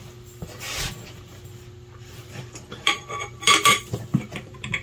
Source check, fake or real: fake